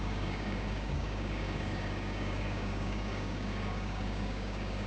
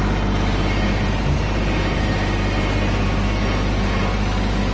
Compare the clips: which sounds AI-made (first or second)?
first